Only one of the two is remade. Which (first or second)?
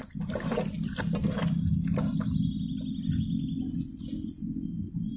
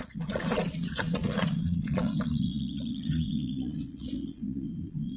second